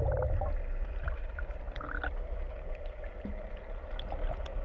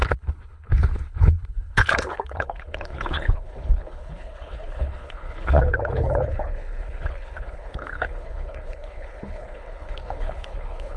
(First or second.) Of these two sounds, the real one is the first